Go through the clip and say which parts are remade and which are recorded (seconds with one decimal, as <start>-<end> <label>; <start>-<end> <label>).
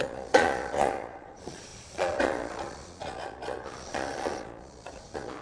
0.0-5.4 remade